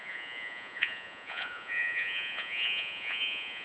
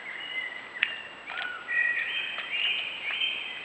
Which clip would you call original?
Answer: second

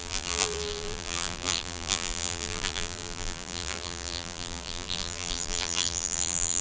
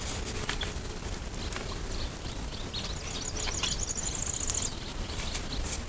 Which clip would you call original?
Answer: second